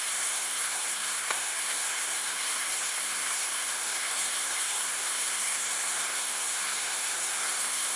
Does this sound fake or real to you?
fake